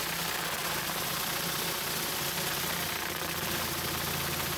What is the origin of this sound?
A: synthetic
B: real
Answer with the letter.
B